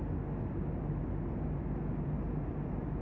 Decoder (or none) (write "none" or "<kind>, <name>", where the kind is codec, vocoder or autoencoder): none